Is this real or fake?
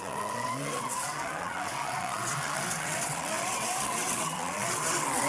fake